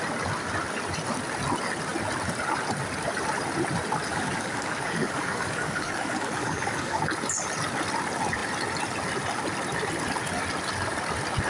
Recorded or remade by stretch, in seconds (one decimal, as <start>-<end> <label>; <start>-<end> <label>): 0.0-4.1 recorded; 4.1-7.0 remade; 7.0-11.5 recorded